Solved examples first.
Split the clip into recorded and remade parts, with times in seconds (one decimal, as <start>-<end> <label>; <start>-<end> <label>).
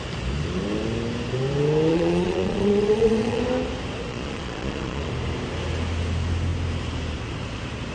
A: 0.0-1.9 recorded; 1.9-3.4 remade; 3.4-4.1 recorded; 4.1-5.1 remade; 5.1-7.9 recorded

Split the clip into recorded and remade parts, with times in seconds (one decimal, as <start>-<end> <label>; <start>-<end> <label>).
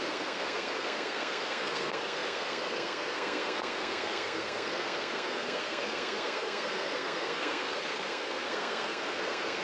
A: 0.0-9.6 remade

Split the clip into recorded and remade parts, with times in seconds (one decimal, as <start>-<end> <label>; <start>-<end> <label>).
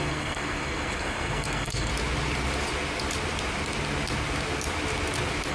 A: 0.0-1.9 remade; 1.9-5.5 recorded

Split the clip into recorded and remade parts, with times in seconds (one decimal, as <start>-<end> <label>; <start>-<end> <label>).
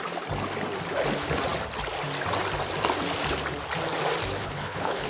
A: 0.0-4.4 recorded; 4.4-5.1 remade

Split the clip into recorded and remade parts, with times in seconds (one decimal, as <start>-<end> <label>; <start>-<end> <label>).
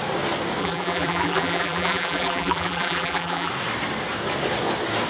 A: 0.0-0.6 recorded; 0.6-3.5 remade; 3.5-5.1 recorded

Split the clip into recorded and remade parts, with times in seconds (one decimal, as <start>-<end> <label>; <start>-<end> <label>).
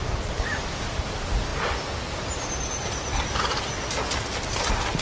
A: 0.0-5.0 recorded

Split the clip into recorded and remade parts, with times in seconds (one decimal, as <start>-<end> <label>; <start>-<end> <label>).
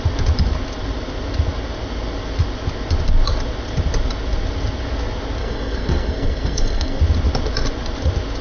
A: 0.0-5.4 recorded; 5.4-7.0 remade; 7.0-8.4 recorded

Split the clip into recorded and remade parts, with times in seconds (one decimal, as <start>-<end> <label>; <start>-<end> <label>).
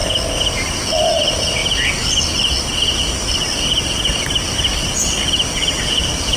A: 0.0-0.8 recorded; 0.8-1.6 remade; 1.6-5.2 recorded; 5.2-6.4 remade